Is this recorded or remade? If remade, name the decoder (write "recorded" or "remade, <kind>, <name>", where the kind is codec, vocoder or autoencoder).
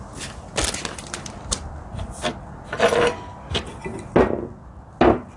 recorded